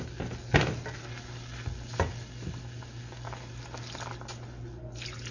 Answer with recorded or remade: recorded